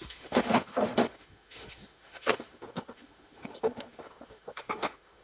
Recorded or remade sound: remade